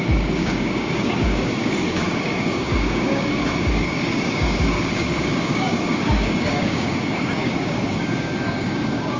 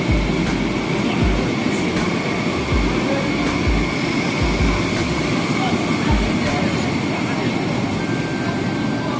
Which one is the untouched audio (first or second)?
second